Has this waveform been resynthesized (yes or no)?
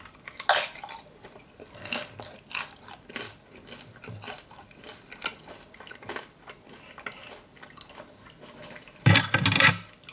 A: no